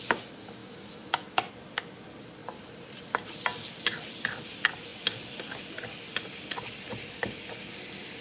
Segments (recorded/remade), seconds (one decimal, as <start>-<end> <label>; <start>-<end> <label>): 0.0-0.6 recorded; 0.6-1.5 remade; 1.5-8.2 recorded